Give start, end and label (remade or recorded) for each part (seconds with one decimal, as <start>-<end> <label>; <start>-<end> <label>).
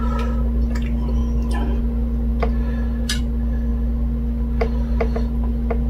0.0-5.9 recorded